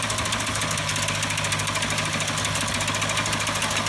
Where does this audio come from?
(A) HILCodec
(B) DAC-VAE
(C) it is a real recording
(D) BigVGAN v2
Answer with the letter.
C